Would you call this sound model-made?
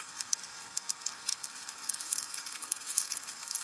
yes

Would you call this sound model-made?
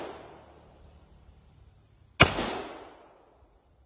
no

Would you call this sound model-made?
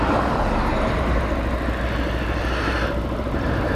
no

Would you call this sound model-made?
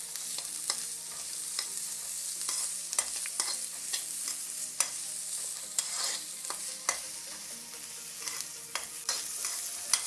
no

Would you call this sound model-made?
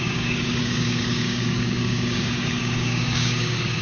yes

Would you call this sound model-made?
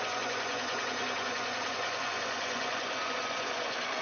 yes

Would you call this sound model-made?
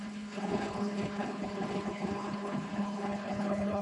yes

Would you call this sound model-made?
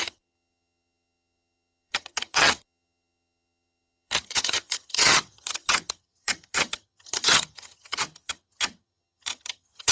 yes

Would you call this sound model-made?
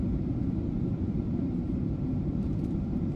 yes